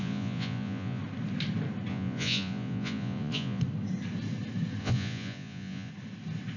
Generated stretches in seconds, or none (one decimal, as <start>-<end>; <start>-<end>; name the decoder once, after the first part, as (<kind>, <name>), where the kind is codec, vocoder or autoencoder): 0.0-1.0 (vocoder, Vocos); 1.9-3.6; 4.8-5.9